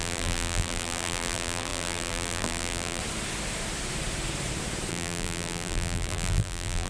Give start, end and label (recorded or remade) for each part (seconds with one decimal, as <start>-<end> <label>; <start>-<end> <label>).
0.0-3.0 remade; 3.0-4.9 recorded; 4.9-6.9 remade